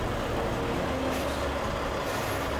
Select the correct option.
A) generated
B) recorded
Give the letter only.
B